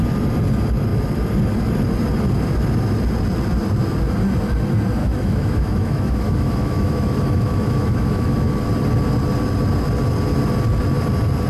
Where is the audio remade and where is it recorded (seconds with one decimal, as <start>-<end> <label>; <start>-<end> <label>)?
0.0-5.0 recorded; 5.0-8.6 remade; 8.6-11.5 recorded